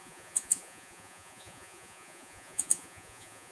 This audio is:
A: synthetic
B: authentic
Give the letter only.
A